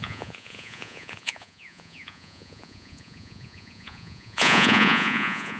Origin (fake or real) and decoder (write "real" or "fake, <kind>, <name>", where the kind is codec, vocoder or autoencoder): fake, vocoder, Vocos